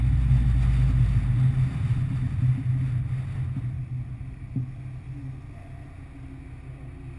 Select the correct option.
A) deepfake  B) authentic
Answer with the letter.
B